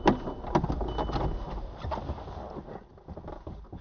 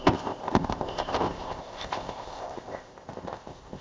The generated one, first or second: second